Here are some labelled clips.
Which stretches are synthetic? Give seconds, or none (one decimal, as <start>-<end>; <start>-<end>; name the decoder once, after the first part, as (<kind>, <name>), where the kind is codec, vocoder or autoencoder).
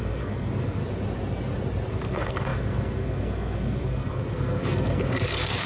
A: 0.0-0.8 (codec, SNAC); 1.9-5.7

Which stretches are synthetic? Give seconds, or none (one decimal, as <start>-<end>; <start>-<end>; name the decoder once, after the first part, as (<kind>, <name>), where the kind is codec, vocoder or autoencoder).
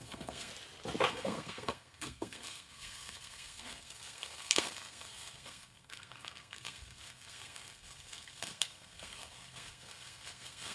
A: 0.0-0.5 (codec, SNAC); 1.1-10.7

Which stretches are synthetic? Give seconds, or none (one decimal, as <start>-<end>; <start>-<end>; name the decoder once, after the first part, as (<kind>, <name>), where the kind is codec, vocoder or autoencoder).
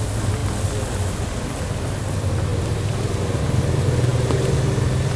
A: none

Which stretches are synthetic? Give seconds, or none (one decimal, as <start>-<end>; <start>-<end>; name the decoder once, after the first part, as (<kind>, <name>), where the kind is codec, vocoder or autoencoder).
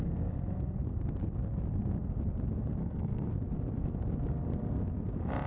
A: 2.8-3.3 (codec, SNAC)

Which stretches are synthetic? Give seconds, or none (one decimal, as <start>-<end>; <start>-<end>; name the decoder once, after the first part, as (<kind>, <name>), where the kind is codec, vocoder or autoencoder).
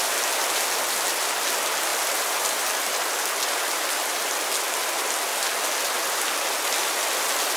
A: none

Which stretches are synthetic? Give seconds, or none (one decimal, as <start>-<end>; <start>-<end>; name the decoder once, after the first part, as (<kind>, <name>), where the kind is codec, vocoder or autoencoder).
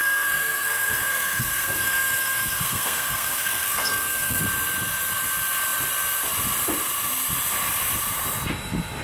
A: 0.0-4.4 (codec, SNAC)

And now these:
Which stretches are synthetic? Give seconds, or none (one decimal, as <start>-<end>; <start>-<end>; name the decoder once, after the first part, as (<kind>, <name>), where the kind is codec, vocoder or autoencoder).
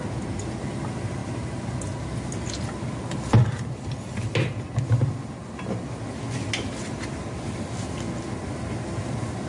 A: none